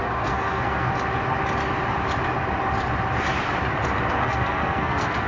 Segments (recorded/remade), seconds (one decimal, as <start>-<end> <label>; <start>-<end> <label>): 0.0-0.9 remade; 0.9-4.1 recorded; 4.1-5.3 remade